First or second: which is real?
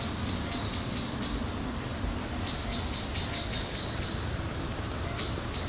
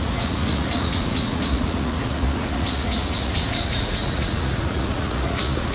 first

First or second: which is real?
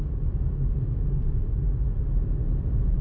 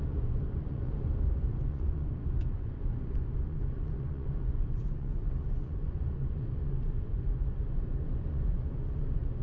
first